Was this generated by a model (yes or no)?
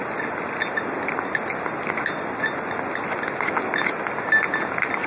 no